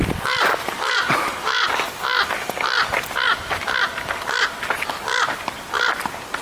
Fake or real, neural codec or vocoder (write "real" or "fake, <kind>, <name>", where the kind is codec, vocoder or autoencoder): real